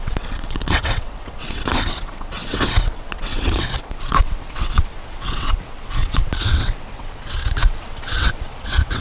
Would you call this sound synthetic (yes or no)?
yes